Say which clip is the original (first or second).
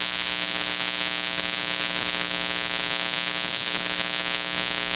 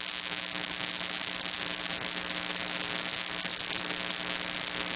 second